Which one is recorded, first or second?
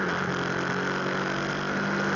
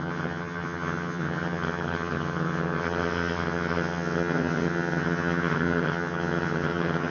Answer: first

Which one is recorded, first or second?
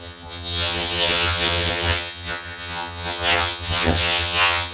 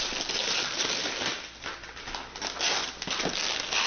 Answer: second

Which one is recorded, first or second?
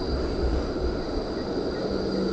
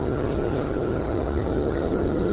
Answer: first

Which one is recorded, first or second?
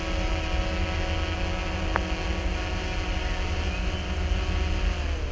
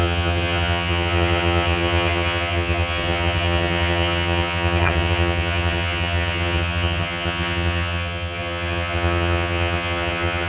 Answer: first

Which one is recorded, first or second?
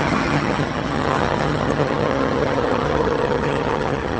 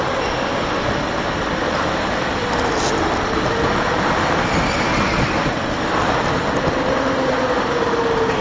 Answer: second